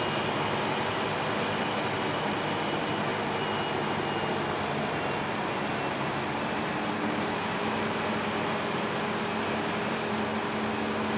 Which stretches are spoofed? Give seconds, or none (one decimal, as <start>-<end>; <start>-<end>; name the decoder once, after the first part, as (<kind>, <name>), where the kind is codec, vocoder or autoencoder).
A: none

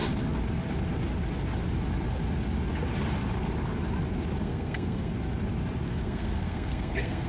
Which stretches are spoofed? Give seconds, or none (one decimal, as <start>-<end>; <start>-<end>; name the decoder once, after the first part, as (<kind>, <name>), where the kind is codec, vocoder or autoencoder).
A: 4.4-5.1 (codec, SNAC); 5.9-7.3

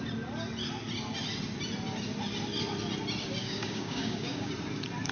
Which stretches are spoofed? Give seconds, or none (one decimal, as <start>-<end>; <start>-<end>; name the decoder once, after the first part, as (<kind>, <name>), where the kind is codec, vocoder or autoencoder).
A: 3.4-4.5 (codec, DAC)

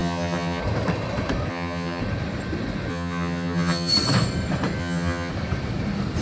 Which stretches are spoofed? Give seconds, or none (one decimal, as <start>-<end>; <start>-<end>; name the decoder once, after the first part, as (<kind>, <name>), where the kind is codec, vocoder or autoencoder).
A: 0.0-0.6 (vocoder, HiFi-GAN); 1.5-2.0; 2.9-3.9; 4.8-5.3

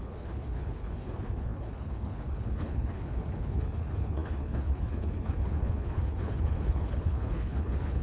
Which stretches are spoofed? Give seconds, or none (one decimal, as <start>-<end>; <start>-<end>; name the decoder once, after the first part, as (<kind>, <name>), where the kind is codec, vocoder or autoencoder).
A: 0.0-8.0 (codec, HILCodec)

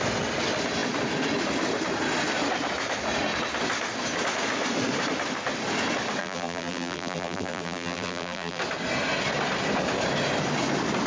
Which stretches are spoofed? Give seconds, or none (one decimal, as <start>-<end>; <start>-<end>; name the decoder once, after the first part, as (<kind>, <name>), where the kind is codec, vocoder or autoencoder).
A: 6.2-8.6 (vocoder, BigVGAN v2)

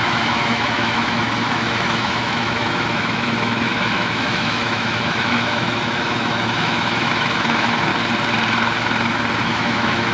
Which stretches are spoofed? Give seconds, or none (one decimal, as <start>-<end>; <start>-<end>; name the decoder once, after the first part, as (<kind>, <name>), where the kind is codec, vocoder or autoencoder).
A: 0.0-7.9 (autoencoder, DAC-VAE); 9.4-10.1